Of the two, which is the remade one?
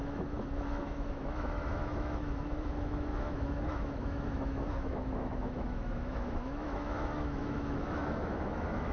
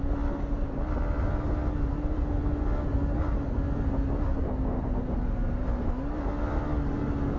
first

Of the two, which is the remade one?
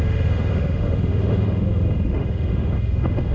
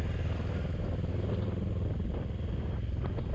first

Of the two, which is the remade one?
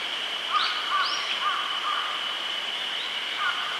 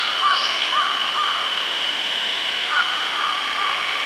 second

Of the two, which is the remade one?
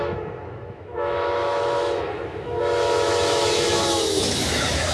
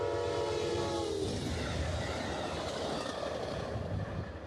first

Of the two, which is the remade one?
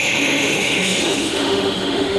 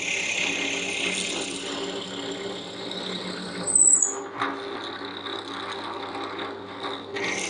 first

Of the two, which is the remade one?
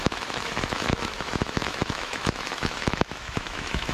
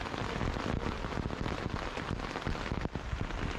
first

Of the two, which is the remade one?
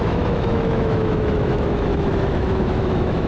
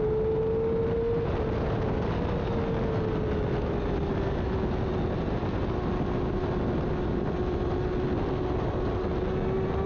first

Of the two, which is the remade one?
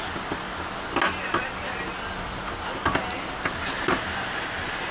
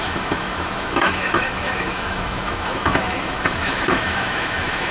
second